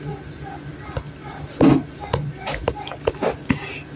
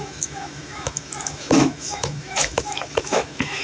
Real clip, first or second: first